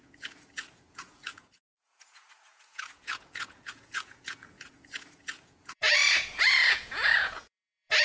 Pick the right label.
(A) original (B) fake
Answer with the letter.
B